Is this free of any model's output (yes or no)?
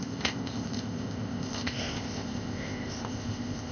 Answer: no